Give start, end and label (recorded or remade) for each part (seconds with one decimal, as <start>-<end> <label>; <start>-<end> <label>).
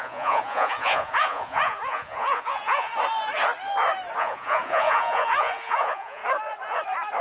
0.0-2.9 remade; 2.9-4.2 recorded; 4.2-6.2 remade; 6.2-7.2 recorded